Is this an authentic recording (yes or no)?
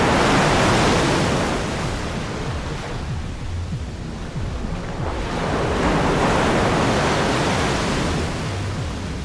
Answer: yes